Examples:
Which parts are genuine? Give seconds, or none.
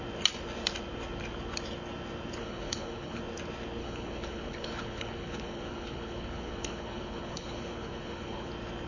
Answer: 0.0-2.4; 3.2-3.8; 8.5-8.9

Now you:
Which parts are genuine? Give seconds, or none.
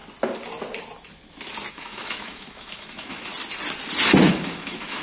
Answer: 0.0-1.7; 3.3-4.3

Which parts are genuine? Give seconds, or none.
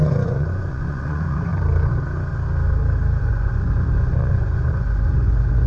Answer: 1.5-3.2